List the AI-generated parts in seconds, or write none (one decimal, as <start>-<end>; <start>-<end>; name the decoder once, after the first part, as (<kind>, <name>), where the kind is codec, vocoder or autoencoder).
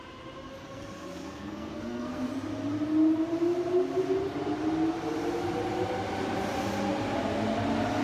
0.6-2.3 (codec, SNAC)